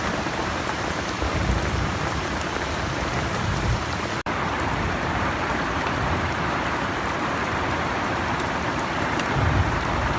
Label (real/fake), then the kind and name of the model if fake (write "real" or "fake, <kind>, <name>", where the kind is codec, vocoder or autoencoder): fake, vocoder, BigVGAN v2